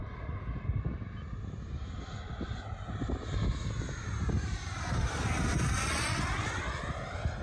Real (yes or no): yes